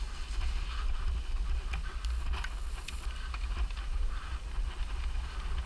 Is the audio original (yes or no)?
yes